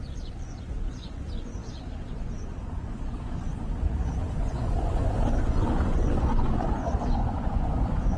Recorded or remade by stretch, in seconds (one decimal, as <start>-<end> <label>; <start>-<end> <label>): 0.0-8.2 remade